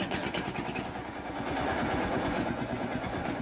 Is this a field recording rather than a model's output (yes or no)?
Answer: no